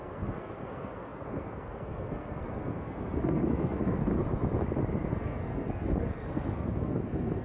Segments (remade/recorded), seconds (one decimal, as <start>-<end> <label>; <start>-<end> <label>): 0.0-4.1 remade; 4.1-5.1 recorded; 5.1-7.4 remade

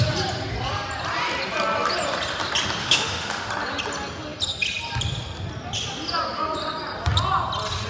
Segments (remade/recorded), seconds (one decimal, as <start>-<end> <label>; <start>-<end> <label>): 0.0-2.8 recorded; 2.8-3.5 remade; 3.5-7.9 recorded